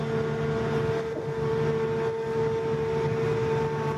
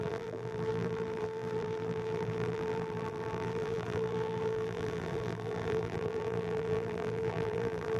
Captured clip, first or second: first